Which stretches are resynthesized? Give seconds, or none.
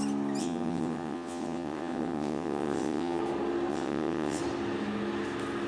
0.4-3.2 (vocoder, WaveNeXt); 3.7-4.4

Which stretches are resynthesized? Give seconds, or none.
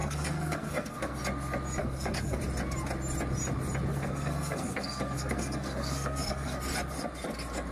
0.0-1.2 (codec, SNAC); 1.8-2.4; 3.9-6.6